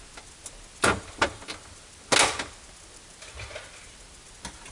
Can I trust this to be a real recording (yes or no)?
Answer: yes